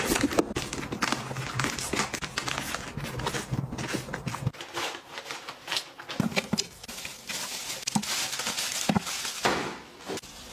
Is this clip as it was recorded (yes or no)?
yes